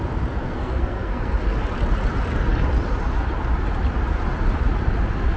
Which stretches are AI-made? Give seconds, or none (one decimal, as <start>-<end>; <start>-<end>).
0.4-1.4